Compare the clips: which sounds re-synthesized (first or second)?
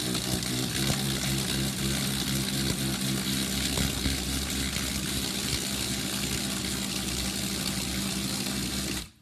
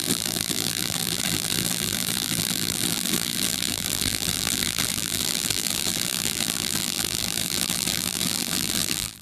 second